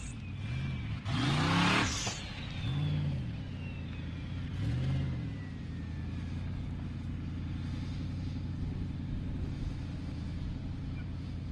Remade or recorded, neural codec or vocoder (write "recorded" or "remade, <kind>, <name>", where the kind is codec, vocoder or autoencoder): recorded